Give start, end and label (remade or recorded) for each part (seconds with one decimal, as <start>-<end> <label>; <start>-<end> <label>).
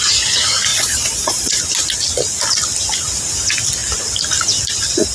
0.0-0.7 recorded; 0.7-1.6 remade; 1.6-5.1 recorded